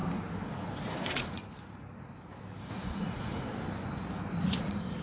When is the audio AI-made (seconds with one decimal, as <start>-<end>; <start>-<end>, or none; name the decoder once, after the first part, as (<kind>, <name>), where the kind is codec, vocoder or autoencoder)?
0.8-1.4 (vocoder, Vocos); 2.7-3.5; 4.4-5.0